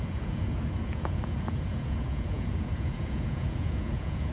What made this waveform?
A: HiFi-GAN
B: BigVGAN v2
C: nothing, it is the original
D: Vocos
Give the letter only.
D